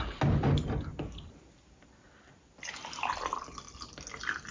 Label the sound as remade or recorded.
recorded